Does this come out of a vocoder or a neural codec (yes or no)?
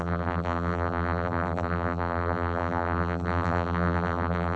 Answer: yes